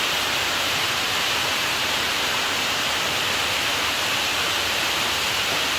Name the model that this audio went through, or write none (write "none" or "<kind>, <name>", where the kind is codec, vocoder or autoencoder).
vocoder, BigVGAN v2